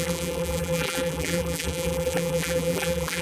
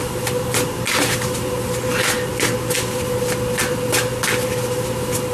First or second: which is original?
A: second